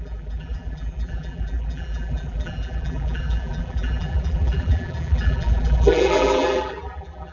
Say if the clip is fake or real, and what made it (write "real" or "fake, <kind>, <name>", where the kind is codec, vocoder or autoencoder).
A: fake, vocoder, BigVGAN v2